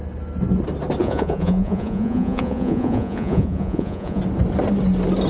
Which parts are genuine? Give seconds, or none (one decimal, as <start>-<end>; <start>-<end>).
0.0-1.0; 4.2-5.3